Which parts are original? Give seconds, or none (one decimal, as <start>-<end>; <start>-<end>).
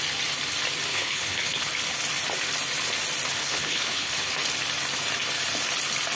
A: 0.0-0.9; 1.7-3.4; 4.1-6.2